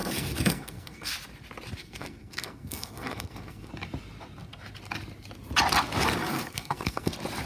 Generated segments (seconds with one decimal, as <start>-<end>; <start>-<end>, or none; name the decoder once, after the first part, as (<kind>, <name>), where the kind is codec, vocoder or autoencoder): 0.0-1.1 (codec, SNAC); 1.8-3.7; 6.3-7.1